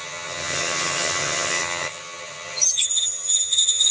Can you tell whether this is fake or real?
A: fake